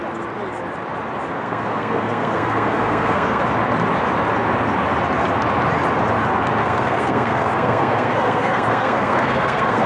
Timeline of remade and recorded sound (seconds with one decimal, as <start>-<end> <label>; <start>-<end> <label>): 0.0-1.3 recorded; 1.3-3.4 remade; 3.4-6.6 recorded; 6.6-9.9 remade